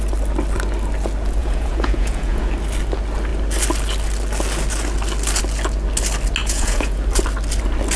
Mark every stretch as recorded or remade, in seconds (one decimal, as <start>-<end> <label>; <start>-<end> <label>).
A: 0.0-1.4 recorded; 1.4-2.5 remade; 2.5-6.4 recorded; 6.4-7.0 remade; 7.0-8.0 recorded